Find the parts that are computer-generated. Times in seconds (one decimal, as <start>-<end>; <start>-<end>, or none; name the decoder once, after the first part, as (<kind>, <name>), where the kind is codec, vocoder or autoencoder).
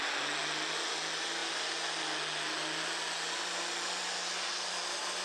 none